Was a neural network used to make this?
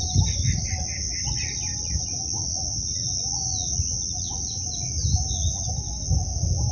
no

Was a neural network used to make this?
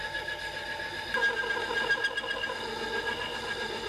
no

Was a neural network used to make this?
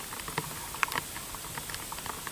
no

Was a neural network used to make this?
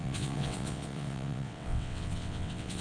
yes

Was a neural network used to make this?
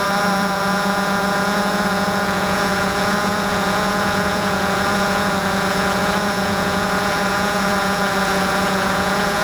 yes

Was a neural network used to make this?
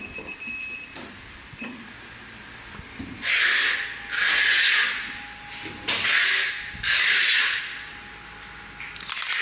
no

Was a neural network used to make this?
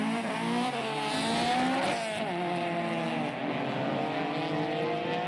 no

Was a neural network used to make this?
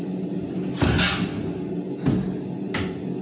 no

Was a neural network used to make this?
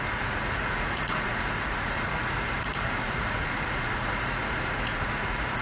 yes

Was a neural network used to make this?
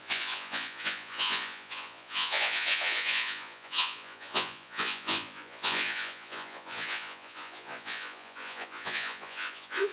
yes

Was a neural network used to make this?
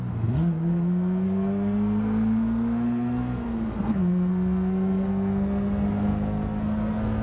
yes